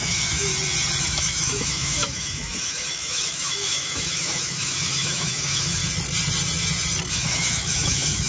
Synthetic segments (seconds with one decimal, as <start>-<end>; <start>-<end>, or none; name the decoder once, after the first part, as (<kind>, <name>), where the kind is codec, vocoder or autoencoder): 0.0-0.5 (autoencoder, DAC-VAE); 1.0-5.8; 7.1-8.3